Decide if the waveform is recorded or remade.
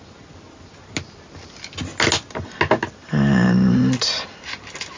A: recorded